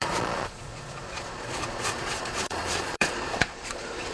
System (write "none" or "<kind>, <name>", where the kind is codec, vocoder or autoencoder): vocoder, Vocos